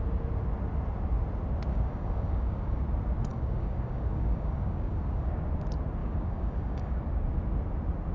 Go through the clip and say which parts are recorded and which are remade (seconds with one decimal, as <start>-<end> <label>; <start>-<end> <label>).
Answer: 0.0-1.7 recorded; 1.7-2.8 remade; 2.8-3.3 recorded; 3.3-5.3 remade; 5.3-6.0 recorded; 6.0-7.0 remade; 7.0-8.1 recorded